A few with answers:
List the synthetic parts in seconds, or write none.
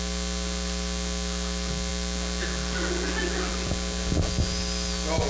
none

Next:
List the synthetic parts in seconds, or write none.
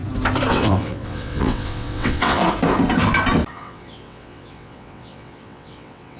0.5-2.4 (vocoder, WaveNeXt); 3.5-6.2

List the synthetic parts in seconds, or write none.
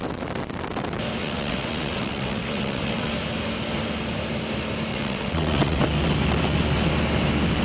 1.2-3.1 (vocoder, WaveNeXt); 4.9-5.8